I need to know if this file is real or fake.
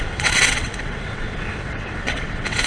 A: fake